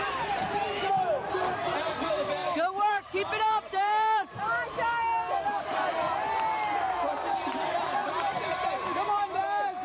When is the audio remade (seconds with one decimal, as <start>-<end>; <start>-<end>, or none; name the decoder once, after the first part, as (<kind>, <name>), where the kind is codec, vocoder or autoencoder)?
0.0-2.4 (vocoder, BigVGAN v2); 2.9-5.1; 6.8-9.8